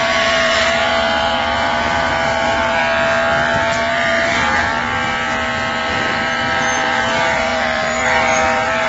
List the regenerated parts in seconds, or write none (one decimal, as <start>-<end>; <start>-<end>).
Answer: 0.0-2.8; 3.9-4.7; 5.7-8.9